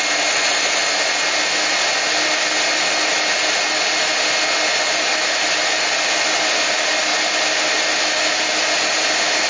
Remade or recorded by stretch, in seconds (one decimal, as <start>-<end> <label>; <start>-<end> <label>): 0.0-9.5 recorded